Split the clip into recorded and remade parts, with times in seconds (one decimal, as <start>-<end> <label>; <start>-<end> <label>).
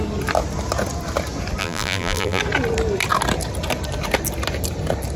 0.0-1.6 recorded; 1.6-2.4 remade; 2.4-5.2 recorded